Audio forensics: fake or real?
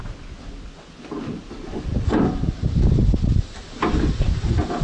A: real